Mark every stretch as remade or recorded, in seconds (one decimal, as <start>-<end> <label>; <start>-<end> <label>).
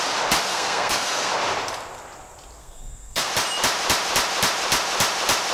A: 0.0-0.5 recorded; 0.5-1.3 remade; 1.3-2.6 recorded; 2.6-3.3 remade; 3.3-5.5 recorded